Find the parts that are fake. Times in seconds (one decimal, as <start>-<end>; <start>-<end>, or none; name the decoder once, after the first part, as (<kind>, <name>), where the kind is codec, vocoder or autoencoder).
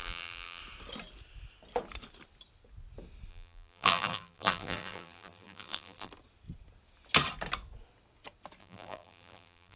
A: 0.0-0.6 (vocoder, BigVGAN v2); 3.3-6.1; 8.6-9.8